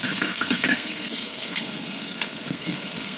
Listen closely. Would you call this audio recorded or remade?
remade